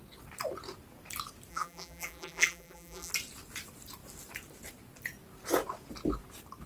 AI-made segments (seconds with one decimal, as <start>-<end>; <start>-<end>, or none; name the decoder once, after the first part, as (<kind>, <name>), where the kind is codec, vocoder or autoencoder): 1.5-3.1 (vocoder, BigVGAN v2)